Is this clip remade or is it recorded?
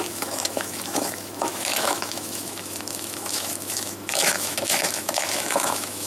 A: remade